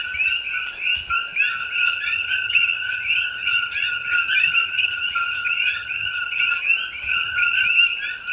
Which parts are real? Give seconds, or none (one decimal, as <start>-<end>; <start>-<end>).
0.0-1.6; 6.6-7.1; 7.7-8.3